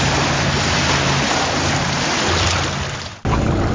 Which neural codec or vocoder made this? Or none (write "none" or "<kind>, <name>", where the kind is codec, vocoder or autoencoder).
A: none